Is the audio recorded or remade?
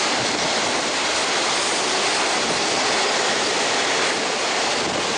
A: recorded